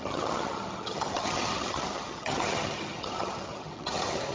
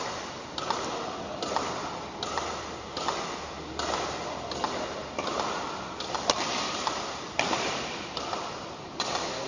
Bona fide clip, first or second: second